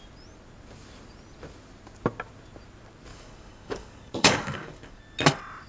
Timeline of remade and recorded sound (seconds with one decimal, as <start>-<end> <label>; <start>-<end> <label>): 0.0-3.1 recorded; 3.1-5.0 remade; 5.0-5.7 recorded